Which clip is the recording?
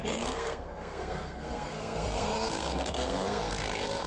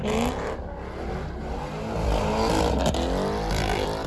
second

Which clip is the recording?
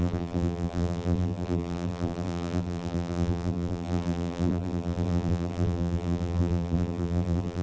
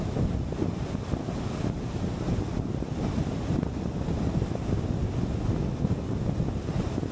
second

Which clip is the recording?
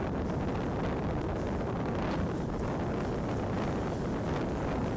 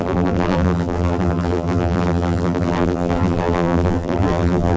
first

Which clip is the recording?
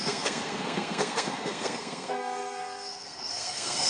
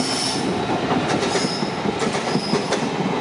second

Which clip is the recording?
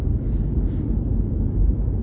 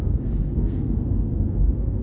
first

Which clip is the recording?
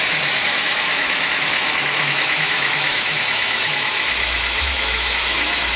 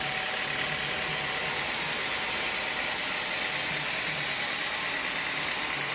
second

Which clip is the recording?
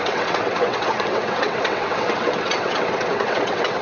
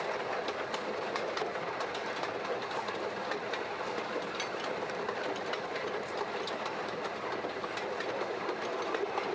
second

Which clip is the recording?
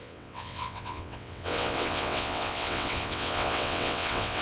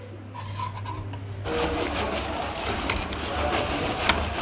second